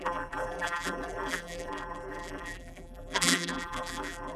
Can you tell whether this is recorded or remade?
remade